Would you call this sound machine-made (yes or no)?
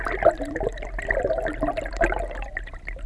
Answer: no